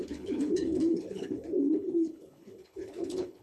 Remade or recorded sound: remade